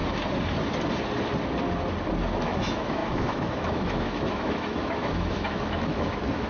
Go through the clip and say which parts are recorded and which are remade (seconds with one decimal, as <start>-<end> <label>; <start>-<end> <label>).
0.0-2.4 recorded; 2.4-6.5 remade